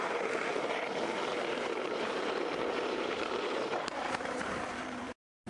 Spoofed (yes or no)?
yes